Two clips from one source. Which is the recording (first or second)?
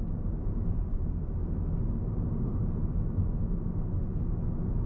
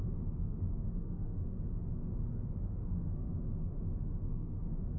first